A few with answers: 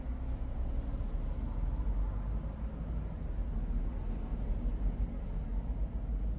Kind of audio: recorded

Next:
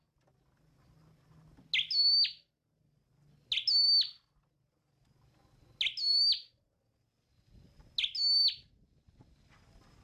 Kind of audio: recorded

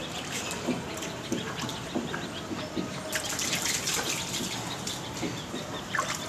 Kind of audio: recorded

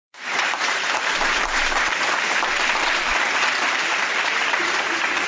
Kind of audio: remade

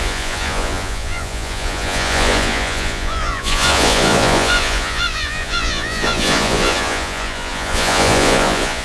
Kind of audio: remade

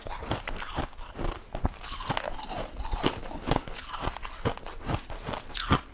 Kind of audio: recorded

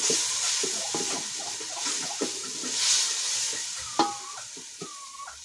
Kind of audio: recorded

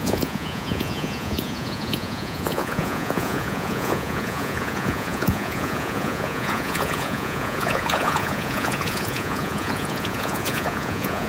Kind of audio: remade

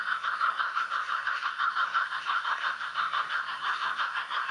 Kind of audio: remade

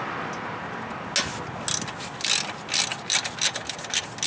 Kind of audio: recorded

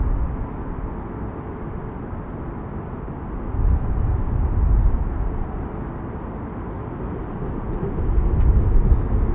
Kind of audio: recorded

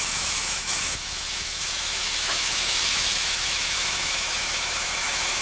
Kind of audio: remade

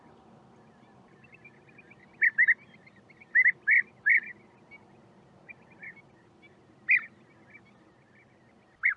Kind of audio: recorded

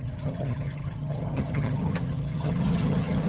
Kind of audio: remade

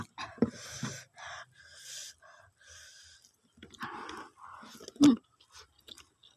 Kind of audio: recorded